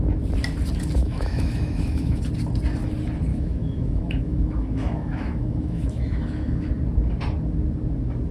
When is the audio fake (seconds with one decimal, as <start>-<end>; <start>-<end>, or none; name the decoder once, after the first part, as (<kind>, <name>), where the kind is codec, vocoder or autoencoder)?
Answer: 1.0-2.2 (autoencoder, DAC-VAE); 3.3-6.7